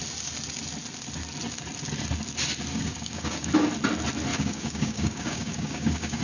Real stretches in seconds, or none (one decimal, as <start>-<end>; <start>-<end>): 0.0-2.7; 3.5-4.3